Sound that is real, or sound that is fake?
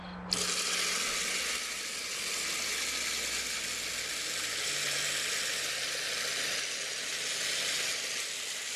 real